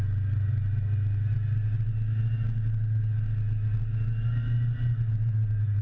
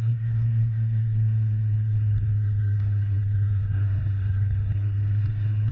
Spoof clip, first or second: second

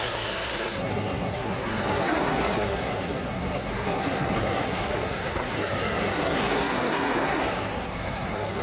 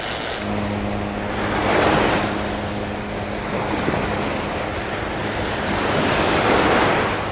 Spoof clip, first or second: first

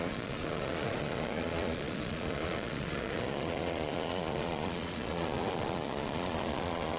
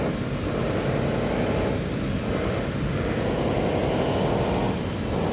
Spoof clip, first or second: first